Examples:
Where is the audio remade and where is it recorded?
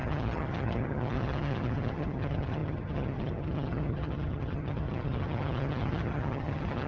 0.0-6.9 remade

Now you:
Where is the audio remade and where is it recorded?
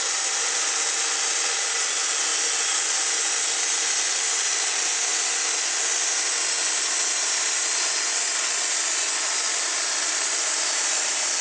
0.0-11.4 recorded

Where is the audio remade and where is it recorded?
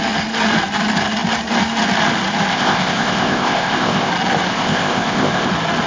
0.0-2.5 recorded; 2.5-4.1 remade; 4.1-4.5 recorded; 4.5-5.5 remade; 5.5-5.9 recorded